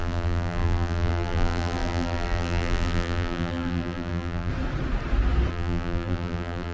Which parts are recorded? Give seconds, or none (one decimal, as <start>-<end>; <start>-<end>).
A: 4.5-5.5